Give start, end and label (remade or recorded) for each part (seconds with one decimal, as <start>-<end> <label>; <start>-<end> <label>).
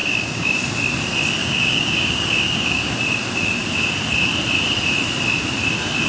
0.0-0.6 remade; 0.6-1.4 recorded; 1.4-2.9 remade; 2.9-6.1 recorded